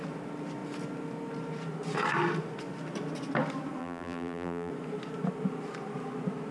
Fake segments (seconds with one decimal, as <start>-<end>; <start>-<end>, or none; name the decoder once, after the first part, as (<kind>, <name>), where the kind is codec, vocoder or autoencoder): 3.8-4.7 (vocoder, BigVGAN v2)